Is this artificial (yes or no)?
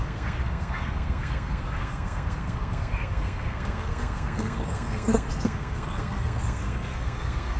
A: yes